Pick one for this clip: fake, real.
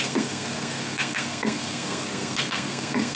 fake